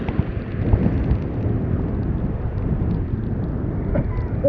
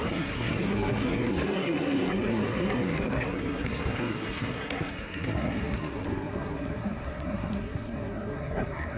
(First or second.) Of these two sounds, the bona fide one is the first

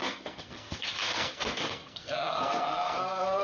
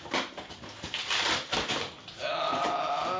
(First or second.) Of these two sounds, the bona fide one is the second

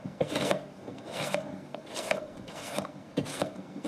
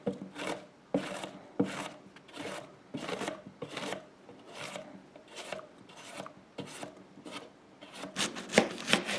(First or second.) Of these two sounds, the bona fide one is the second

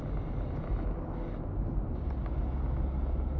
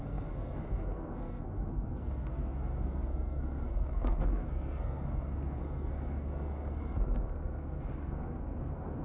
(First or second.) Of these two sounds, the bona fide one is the first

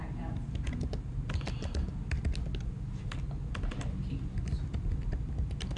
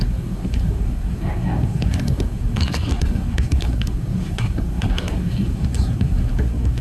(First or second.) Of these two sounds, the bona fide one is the first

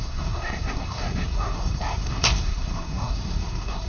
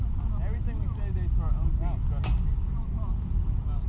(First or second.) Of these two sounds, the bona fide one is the second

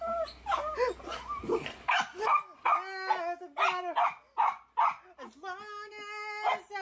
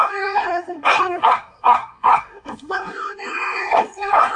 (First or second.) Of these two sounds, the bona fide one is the first